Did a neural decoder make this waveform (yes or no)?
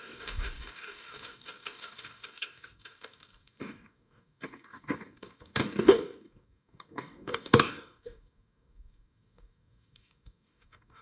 yes